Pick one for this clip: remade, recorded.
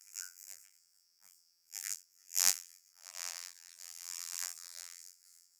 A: remade